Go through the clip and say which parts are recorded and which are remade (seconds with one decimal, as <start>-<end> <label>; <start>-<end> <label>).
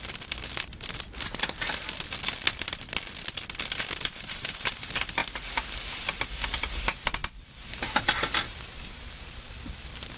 0.0-10.2 recorded